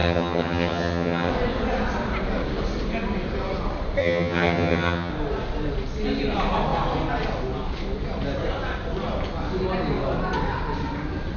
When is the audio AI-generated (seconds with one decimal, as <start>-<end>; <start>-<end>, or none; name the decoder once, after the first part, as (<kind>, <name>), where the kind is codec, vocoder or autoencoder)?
0.0-1.3 (vocoder, HiFi-GAN); 4.0-5.1